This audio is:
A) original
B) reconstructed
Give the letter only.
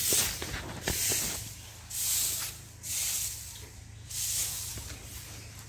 A